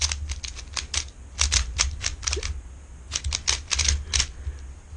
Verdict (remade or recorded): recorded